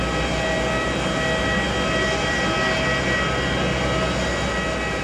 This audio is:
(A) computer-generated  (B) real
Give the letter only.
B